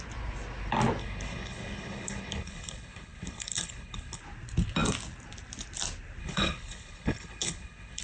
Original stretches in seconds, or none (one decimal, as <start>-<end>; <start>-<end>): 0.0-1.0; 4.2-6.2